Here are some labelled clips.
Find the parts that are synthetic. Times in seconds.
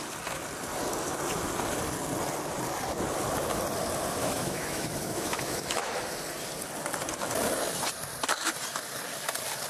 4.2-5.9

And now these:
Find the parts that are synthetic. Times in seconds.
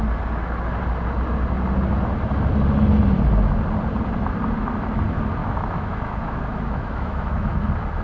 5.4-7.6